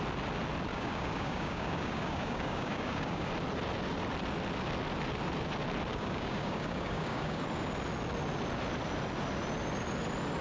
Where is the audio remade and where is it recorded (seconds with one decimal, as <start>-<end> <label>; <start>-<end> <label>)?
0.0-0.7 recorded; 0.7-3.3 remade; 3.3-5.9 recorded; 5.9-7.4 remade; 7.4-10.4 recorded